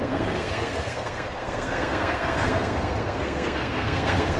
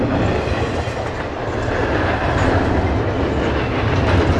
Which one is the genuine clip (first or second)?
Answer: second